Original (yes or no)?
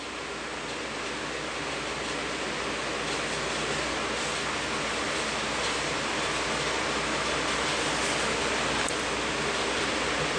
yes